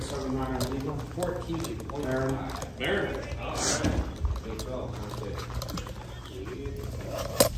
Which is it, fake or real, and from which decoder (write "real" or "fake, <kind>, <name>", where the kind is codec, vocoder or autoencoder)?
real